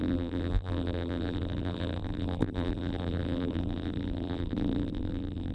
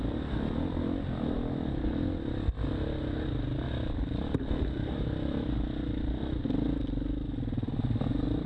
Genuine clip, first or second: second